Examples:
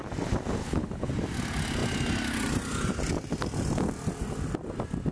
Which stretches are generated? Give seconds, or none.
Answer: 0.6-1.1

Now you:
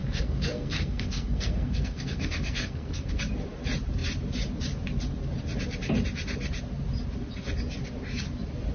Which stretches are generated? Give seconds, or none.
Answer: 0.0-3.2

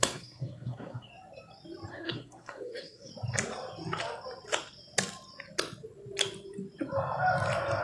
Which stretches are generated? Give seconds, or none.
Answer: 0.0-1.1; 1.9-3.1

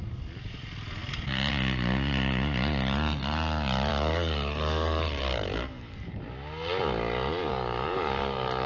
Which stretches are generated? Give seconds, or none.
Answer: 3.9-6.2; 7.5-8.7

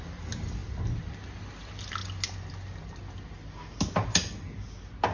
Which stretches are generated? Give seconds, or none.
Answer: none

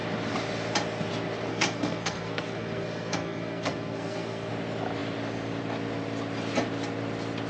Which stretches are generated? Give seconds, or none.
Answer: 1.5-4.5